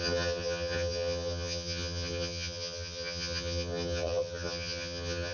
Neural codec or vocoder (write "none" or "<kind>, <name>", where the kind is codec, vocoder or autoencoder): vocoder, HiFi-GAN